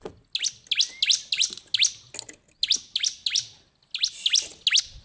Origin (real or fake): real